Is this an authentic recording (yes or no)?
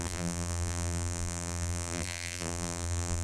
no